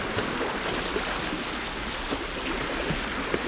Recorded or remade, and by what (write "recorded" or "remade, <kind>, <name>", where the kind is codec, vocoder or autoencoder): recorded